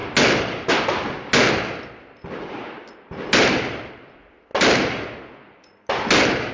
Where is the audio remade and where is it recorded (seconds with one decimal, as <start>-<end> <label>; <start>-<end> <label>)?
0.0-6.5 recorded